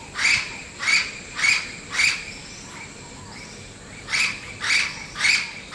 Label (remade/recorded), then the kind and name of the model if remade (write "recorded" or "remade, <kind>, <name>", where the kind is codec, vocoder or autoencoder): remade, vocoder, BigVGAN v2